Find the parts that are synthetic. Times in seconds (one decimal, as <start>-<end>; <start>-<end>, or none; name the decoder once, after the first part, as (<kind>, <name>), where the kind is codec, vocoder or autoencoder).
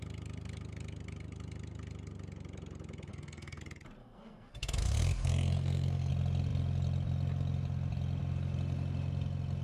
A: 3.1-3.6 (codec, SNAC); 4.0-6.1